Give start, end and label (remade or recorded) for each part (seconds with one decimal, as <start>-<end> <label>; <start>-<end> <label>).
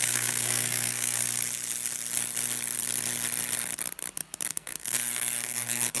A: 0.0-1.2 remade; 1.2-4.5 recorded; 4.5-6.0 remade